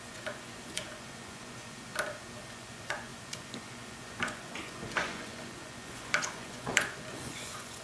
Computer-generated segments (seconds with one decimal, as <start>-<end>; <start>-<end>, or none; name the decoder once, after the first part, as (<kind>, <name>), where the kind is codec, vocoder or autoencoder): 0.0-1.9 (vocoder, Vocos); 2.5-7.8